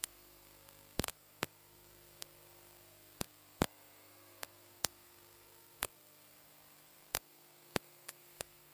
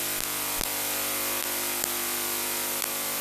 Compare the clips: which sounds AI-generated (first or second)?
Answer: first